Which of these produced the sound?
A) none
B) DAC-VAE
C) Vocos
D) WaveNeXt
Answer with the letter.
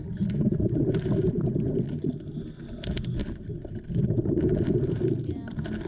A